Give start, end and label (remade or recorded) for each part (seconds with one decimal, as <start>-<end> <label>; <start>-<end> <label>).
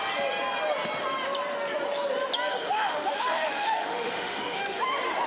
0.0-2.5 recorded; 2.5-4.8 remade; 4.8-5.3 recorded